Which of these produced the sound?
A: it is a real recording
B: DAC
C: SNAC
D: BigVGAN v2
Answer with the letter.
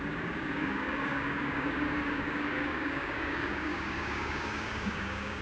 B